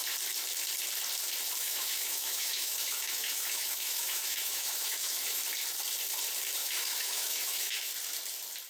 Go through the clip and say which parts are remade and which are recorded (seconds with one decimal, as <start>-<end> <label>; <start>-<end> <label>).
0.0-1.6 recorded; 1.6-5.4 remade; 5.4-6.6 recorded; 6.6-7.9 remade; 7.9-8.7 recorded